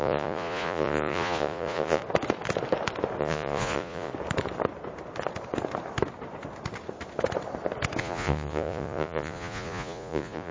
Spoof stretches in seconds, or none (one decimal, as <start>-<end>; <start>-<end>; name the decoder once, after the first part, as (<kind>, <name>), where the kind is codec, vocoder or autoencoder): 0.0-2.0 (vocoder, Vocos); 3.2-4.1; 8.0-10.5